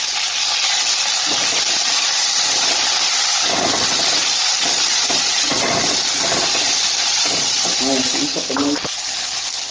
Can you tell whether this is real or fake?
real